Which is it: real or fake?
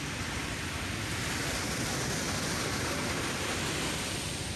real